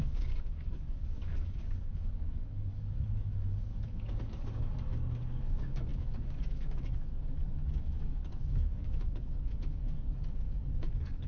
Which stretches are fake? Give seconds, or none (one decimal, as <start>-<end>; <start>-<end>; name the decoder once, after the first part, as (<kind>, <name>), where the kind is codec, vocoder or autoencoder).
0.0-11.3 (codec, DAC)